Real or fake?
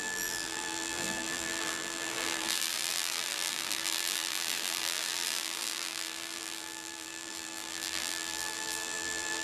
fake